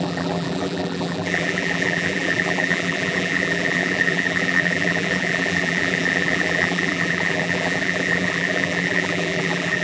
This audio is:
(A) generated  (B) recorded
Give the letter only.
A